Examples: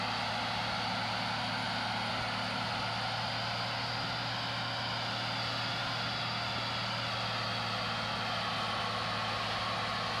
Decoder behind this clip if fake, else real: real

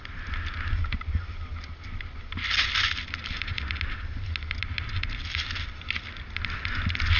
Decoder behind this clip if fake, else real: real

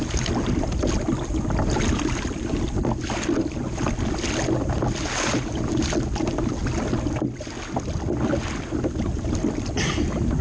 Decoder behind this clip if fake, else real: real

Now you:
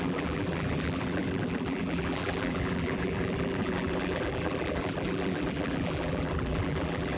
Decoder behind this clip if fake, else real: fake, vocoder, BigVGAN v2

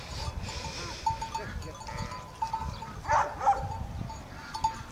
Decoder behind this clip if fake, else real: real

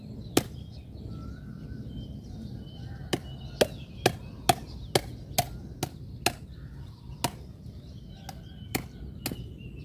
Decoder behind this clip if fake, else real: real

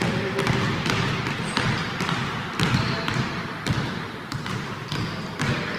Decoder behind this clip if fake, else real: real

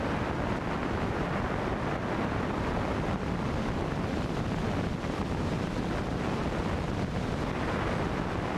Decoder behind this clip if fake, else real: fake, vocoder, BigVGAN v2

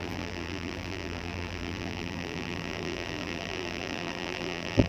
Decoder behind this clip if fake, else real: fake, vocoder, BigVGAN v2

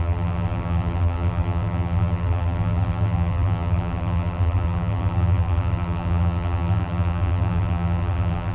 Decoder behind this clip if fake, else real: fake, vocoder, BigVGAN v2